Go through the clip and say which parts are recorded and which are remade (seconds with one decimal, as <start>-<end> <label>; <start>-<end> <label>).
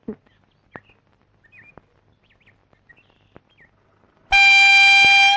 0.0-5.4 recorded